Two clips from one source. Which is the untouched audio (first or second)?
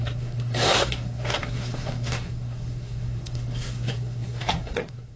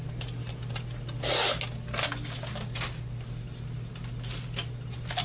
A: second